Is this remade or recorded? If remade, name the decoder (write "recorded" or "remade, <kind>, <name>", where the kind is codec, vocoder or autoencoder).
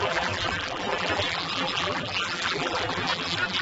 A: remade, vocoder, BigVGAN v2